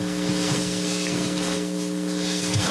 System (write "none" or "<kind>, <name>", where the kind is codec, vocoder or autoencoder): codec, SNAC